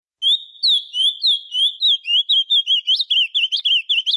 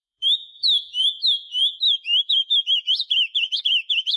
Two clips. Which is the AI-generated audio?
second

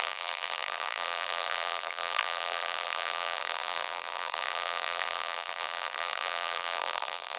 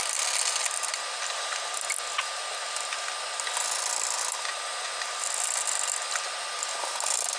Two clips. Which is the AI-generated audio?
first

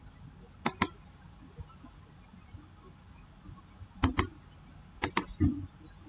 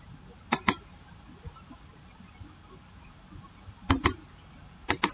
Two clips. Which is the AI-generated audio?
second